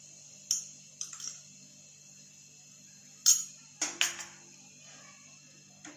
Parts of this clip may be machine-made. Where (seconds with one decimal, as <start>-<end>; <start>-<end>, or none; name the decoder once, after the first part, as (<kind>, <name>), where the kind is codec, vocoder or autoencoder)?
none